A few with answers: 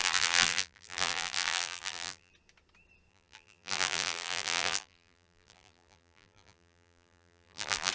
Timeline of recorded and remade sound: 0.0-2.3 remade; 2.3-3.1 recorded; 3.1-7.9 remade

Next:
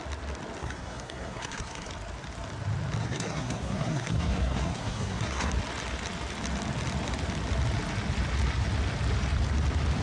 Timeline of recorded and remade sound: 0.0-0.6 recorded; 0.6-1.9 remade; 1.9-3.0 recorded; 3.0-5.5 remade; 5.5-10.0 recorded

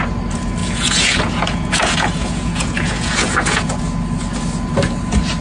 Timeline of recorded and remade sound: 0.0-0.6 recorded; 0.6-3.8 remade; 3.8-5.4 recorded

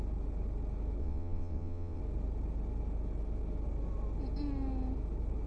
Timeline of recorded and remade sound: 0.0-1.0 recorded; 1.0-2.0 remade; 2.0-5.5 recorded